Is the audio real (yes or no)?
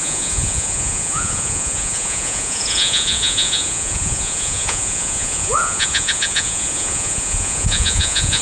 no